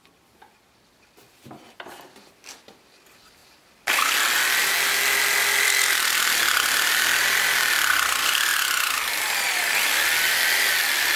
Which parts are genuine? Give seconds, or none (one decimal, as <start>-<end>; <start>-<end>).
0.0-8.5; 9.1-11.2